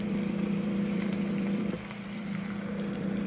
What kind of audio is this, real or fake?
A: fake